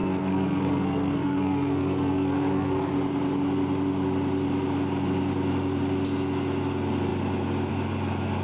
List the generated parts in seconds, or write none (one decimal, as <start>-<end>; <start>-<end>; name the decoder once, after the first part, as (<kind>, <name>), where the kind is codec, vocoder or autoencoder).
0.0-2.9 (codec, SNAC)